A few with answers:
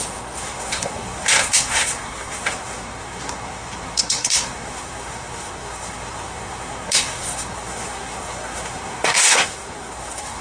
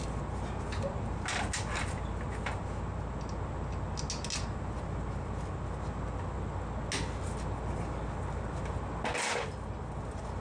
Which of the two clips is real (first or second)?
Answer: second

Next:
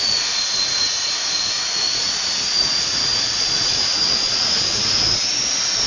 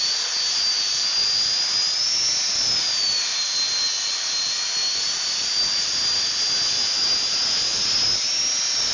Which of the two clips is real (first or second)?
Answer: second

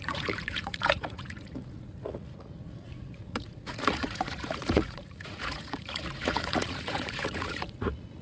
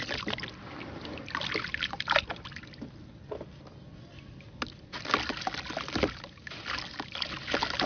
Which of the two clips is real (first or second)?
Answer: second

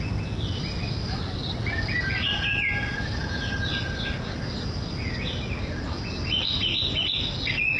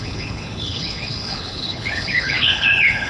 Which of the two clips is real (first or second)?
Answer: first